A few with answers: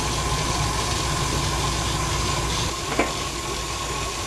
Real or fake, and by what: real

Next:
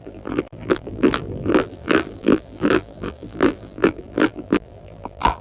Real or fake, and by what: fake, vocoder, BigVGAN v2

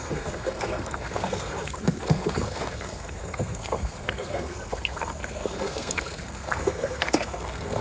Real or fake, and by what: fake, codec, SNAC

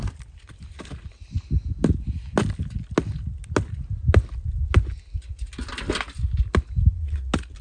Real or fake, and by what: real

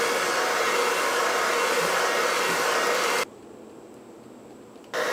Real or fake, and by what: real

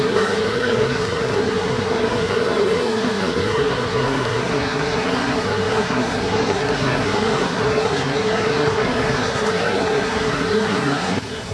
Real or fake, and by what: fake, codec, SNAC